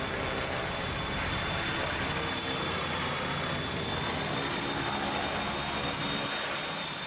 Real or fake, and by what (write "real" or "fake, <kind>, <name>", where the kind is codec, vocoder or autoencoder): real